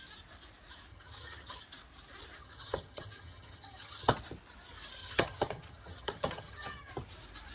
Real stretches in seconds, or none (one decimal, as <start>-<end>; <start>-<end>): 0.0-0.9; 1.6-2.4; 4.2-5.0; 6.9-7.5